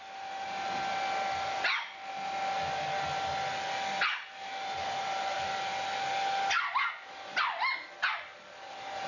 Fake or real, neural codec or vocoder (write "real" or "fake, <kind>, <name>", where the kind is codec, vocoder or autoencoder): real